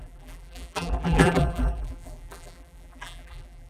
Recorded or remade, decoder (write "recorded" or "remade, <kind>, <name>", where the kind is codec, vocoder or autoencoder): remade, vocoder, BigVGAN v2